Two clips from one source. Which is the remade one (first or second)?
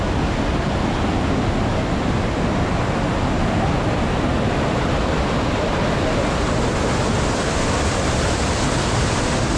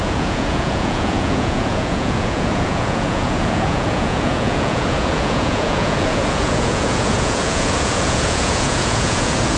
second